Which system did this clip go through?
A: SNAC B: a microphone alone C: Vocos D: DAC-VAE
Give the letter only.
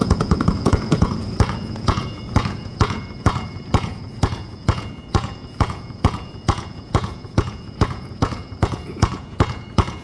C